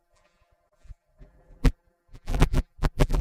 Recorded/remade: remade